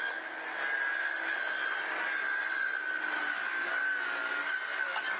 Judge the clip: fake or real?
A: real